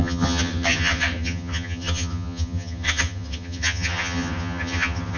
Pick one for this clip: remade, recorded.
remade